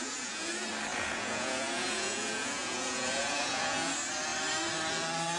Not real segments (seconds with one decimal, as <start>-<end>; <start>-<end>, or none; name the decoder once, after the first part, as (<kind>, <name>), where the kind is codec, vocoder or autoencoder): 0.0-0.5 (vocoder, Vocos); 0.9-3.9